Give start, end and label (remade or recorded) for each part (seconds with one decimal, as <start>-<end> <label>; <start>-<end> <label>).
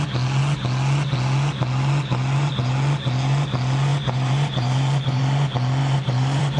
0.0-3.9 recorded; 3.9-5.2 remade; 5.2-5.8 recorded; 5.8-6.6 remade